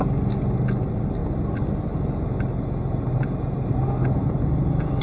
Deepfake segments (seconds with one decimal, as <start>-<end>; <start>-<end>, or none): none